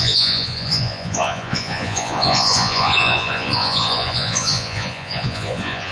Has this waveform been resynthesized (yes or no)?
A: yes